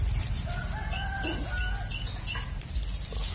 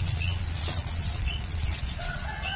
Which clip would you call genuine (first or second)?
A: first